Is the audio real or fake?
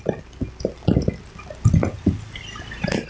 real